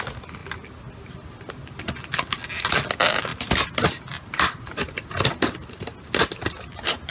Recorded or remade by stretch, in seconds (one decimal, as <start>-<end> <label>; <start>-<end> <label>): 0.0-7.1 recorded